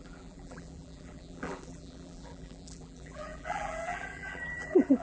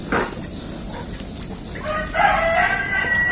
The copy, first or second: first